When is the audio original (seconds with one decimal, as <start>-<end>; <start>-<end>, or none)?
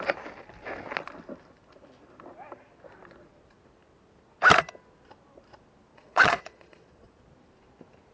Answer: 0.0-5.9; 7.2-8.1